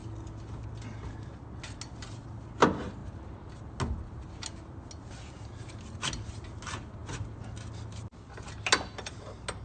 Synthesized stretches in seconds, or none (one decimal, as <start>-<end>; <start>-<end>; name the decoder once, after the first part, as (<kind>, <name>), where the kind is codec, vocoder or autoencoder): none